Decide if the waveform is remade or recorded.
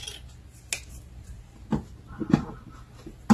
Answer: recorded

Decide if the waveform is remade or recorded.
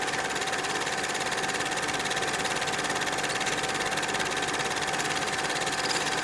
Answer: recorded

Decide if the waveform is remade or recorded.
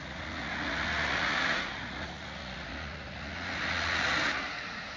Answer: remade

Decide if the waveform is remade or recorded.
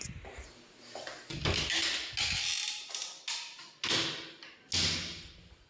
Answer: recorded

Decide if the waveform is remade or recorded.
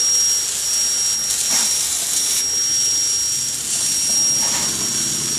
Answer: recorded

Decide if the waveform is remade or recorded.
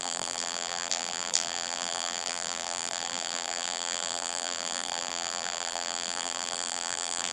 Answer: remade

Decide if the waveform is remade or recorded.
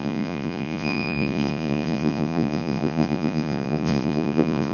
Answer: remade